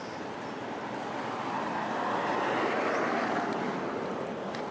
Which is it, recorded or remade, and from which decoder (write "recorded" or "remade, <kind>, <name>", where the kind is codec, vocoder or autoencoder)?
recorded